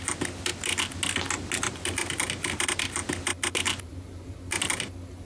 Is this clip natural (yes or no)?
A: yes